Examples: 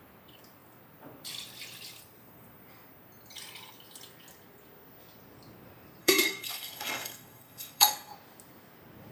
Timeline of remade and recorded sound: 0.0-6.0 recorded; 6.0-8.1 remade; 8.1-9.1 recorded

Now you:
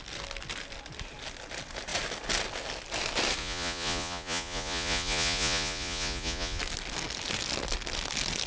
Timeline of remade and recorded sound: 0.0-3.4 recorded; 3.4-6.6 remade; 6.6-8.5 recorded

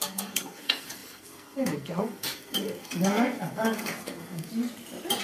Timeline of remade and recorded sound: 0.0-4.5 remade; 4.5-5.2 recorded

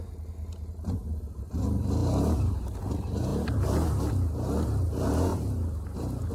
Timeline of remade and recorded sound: 0.0-2.0 recorded; 2.0-2.8 remade; 2.8-3.3 recorded; 3.3-4.0 remade; 4.0-5.3 recorded; 5.3-6.3 remade